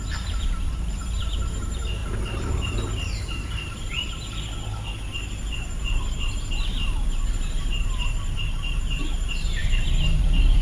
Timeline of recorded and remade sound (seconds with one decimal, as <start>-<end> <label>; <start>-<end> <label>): 0.0-2.0 remade; 2.0-3.2 recorded; 3.2-3.8 remade; 3.8-7.5 recorded; 7.5-10.6 remade